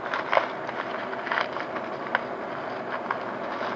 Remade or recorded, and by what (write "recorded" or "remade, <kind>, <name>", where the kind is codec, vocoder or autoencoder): recorded